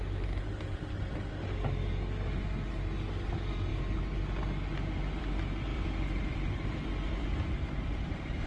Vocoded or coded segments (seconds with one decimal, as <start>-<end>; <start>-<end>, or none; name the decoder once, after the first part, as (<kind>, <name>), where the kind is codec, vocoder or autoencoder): 5.7-8.5 (vocoder, BigVGAN v2)